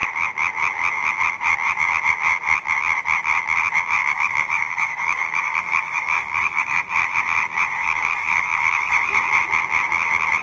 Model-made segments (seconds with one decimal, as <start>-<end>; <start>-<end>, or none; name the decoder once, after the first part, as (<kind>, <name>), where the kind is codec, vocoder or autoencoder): 4.0-6.8 (codec, DAC); 7.8-9.2